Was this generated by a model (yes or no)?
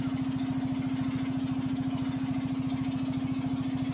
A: no